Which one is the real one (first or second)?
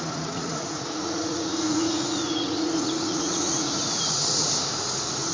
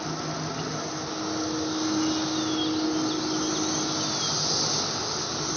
second